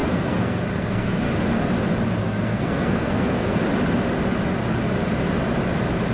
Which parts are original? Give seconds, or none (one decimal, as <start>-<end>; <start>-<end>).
1.3-2.2; 3.6-6.1